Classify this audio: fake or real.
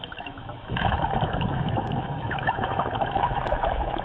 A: fake